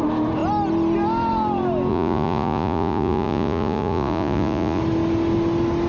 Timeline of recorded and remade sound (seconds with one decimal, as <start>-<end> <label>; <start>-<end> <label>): 0.0-1.9 recorded; 1.9-4.8 remade; 4.8-5.9 recorded